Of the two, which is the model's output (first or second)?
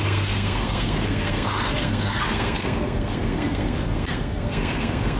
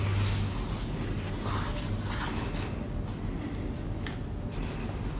first